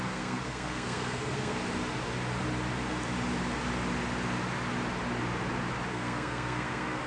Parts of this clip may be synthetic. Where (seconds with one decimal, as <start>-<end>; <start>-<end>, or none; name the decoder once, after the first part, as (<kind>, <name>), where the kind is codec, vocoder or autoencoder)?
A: 0.0-1.6 (codec, SNAC); 5.9-7.1